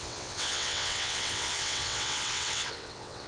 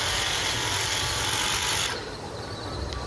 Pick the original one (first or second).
second